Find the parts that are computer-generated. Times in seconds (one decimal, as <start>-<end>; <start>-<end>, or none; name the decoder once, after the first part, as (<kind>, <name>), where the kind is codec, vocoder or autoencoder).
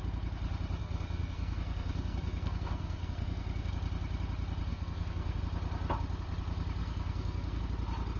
0.8-3.7 (codec, SNAC); 4.7-5.4; 6.8-7.6